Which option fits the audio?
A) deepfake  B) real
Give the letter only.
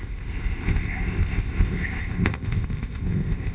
A